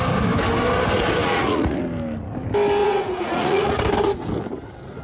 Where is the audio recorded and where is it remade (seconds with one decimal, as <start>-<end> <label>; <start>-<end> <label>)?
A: 0.0-1.2 recorded; 1.2-1.8 remade; 1.8-2.8 recorded; 2.8-3.8 remade; 3.8-5.0 recorded